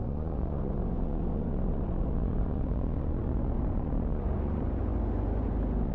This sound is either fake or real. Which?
fake